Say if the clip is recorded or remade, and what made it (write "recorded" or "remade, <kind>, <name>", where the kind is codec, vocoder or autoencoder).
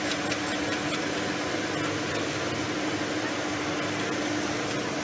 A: recorded